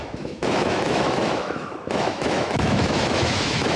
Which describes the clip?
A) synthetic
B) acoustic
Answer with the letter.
A